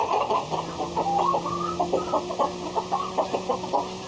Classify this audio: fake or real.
real